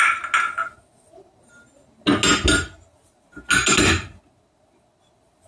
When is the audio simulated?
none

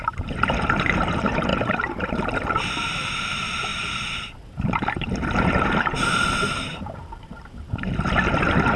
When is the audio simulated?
0.0-1.5 (vocoder, BigVGAN v2); 2.7-8.8